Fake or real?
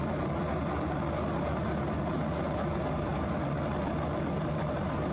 real